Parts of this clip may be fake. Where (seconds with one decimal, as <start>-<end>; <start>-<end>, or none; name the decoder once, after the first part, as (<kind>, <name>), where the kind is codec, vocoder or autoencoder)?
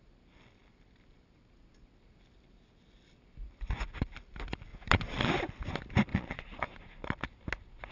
4.7-5.3 (vocoder, Vocos); 6.1-7.0